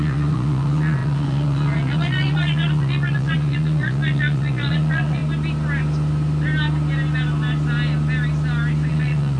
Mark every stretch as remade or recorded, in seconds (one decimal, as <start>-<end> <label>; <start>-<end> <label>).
0.0-5.2 remade; 5.2-8.9 recorded; 8.9-9.4 remade